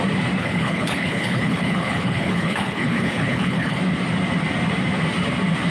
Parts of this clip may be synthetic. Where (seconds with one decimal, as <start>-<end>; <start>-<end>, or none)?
0.4-3.8